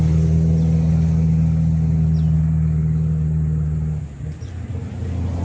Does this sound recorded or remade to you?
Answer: recorded